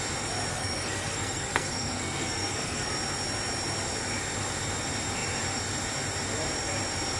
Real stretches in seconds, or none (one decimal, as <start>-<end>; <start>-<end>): 0.0-0.5; 2.9-7.2